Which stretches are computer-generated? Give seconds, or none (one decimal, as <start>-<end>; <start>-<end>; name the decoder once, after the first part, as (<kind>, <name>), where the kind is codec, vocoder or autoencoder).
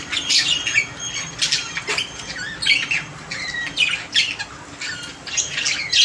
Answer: none